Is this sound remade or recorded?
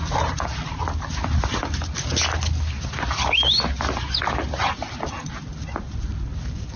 recorded